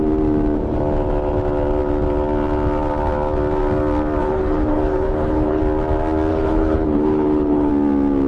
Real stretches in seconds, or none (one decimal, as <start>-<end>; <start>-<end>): 0.0-4.2; 5.6-6.3; 7.7-8.3